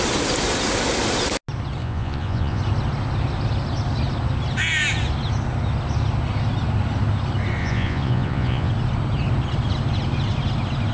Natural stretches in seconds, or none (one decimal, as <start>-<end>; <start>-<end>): 0.0-1.8; 2.6-7.6; 8.7-10.9